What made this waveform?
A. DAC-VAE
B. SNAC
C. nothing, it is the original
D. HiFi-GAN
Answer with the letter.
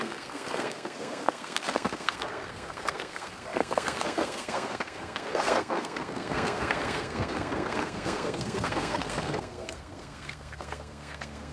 B